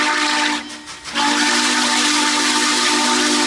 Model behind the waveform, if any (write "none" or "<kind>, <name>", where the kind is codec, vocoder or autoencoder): none